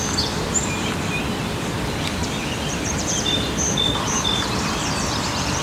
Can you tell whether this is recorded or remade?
remade